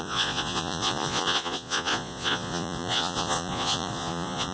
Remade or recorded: remade